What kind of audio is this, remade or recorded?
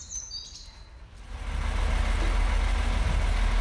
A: recorded